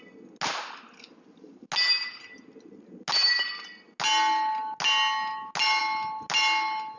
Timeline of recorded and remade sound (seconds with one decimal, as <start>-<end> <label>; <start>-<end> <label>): 0.0-7.0 recorded